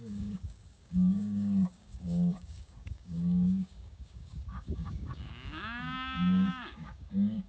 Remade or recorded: remade